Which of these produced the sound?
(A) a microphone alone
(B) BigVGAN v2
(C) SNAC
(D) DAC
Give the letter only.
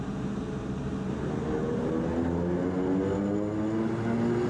A